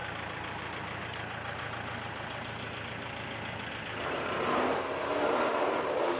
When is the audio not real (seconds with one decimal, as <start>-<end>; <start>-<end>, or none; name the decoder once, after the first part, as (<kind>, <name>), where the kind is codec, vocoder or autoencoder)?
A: none